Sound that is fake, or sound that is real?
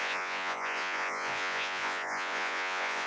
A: fake